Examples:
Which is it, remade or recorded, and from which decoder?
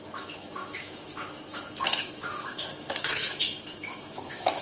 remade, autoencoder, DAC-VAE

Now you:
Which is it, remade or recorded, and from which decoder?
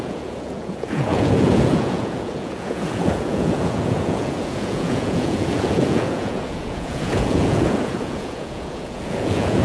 remade, vocoder, Vocos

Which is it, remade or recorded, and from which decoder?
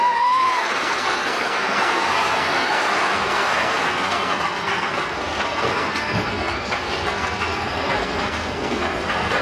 remade, codec, SNAC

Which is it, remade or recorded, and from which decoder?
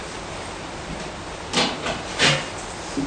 recorded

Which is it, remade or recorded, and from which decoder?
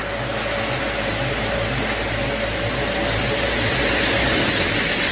recorded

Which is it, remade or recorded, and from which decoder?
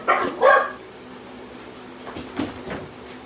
recorded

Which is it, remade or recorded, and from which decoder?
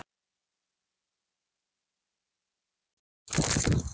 recorded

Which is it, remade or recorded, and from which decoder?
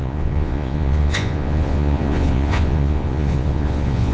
remade, vocoder, Vocos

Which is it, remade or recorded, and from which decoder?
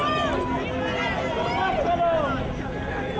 recorded